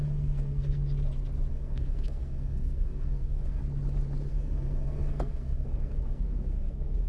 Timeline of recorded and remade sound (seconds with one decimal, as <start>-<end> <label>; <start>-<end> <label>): 0.0-0.8 remade; 0.8-1.5 recorded; 1.5-3.6 remade; 3.6-4.3 recorded; 4.3-7.1 remade